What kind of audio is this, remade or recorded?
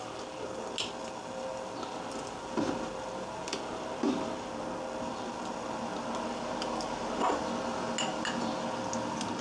recorded